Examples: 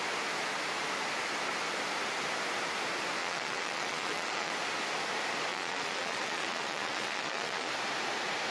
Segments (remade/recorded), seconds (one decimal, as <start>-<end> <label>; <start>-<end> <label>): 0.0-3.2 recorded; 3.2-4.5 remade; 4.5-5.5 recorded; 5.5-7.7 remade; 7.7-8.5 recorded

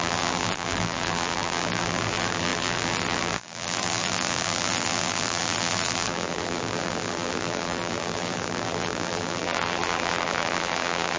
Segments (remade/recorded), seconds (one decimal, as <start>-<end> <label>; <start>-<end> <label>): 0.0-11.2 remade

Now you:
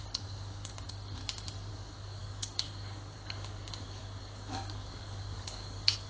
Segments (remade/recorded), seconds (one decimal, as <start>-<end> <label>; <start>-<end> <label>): 0.0-1.2 remade; 1.2-1.7 recorded; 1.7-6.1 remade

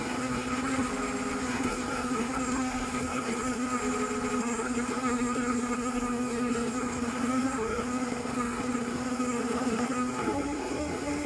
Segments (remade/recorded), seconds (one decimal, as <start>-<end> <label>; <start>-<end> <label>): 0.0-0.9 remade; 0.9-1.4 recorded; 1.4-3.8 remade; 3.8-4.4 recorded; 4.4-11.3 remade

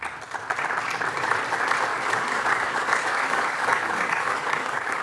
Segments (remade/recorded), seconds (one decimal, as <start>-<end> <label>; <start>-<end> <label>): 0.0-1.9 recorded; 1.9-5.0 remade

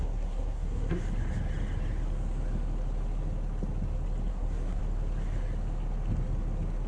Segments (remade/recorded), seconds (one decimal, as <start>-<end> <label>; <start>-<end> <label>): 0.0-1.0 remade; 1.0-4.3 recorded; 4.3-4.8 remade; 4.8-6.9 recorded

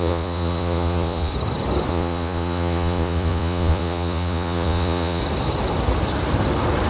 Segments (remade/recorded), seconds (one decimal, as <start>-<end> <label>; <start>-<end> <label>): 0.0-1.3 remade; 1.3-1.9 recorded; 1.9-5.2 remade; 5.2-6.9 recorded

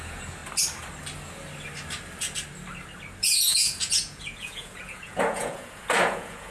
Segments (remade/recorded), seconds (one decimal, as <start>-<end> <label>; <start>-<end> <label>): 0.0-0.4 remade; 0.4-3.2 recorded; 3.2-6.5 remade